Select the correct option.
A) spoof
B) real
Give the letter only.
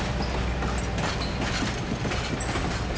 B